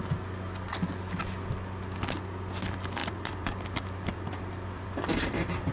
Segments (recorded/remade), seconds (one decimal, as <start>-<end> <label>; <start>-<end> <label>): 0.0-3.0 recorded; 3.0-5.7 remade